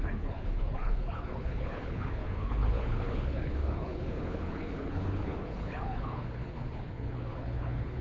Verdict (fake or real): fake